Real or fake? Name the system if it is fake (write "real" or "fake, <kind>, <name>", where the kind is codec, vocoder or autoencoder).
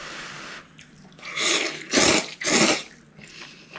real